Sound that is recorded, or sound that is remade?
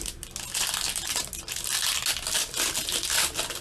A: recorded